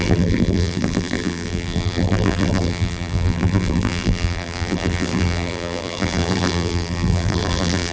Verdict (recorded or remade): remade